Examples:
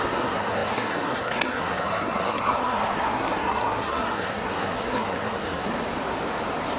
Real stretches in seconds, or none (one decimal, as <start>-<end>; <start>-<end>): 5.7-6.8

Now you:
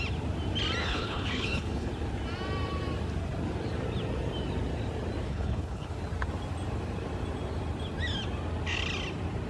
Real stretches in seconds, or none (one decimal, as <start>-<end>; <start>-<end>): 0.0-0.8; 1.9-5.3; 5.9-9.5

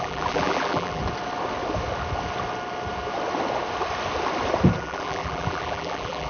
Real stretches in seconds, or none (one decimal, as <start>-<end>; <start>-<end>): 1.0-4.8